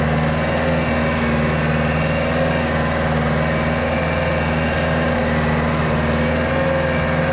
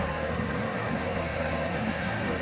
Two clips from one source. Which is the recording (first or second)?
first